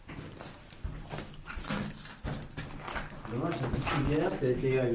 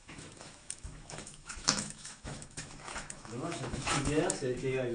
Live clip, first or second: first